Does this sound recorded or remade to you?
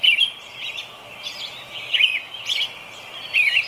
recorded